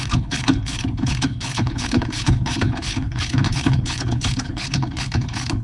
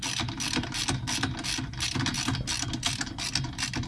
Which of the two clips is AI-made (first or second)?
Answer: first